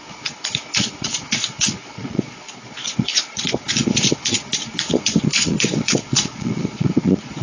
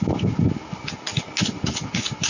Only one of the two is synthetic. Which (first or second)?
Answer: first